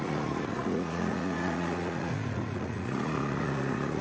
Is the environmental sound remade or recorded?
remade